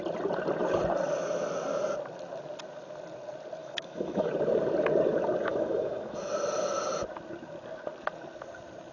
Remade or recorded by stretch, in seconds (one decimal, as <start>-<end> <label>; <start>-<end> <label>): 0.0-3.6 recorded; 3.6-4.3 remade; 4.3-5.5 recorded; 5.5-6.3 remade; 6.3-8.9 recorded